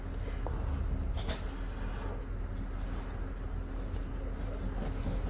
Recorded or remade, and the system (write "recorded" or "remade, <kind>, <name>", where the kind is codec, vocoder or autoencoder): recorded